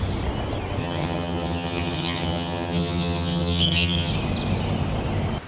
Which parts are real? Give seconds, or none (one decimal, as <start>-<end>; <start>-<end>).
0.0-0.8; 4.1-5.5